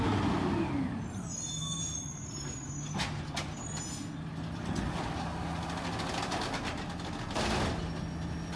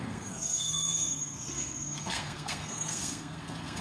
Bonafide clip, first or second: first